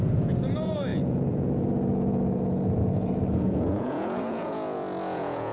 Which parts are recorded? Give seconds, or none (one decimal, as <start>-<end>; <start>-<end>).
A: none